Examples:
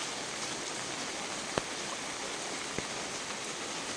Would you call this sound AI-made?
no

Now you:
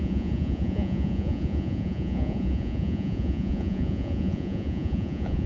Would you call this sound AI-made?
yes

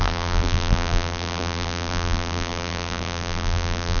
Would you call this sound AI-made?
yes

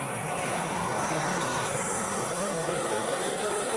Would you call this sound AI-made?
yes